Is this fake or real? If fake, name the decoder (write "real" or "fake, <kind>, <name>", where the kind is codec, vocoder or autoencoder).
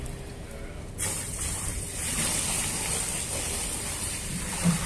real